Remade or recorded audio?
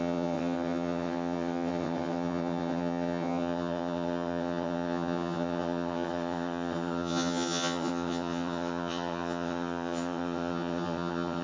remade